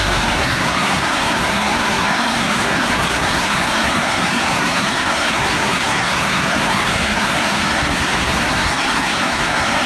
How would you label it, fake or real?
fake